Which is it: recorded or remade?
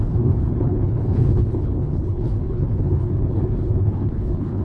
remade